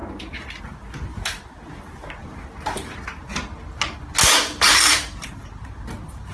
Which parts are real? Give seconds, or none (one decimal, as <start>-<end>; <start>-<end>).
0.0-6.3